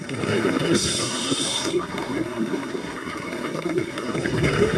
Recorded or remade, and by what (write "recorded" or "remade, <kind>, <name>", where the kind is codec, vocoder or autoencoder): remade, codec, SNAC